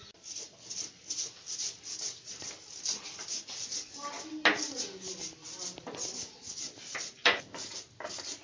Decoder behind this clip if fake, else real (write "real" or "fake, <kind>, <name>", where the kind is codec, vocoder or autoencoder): real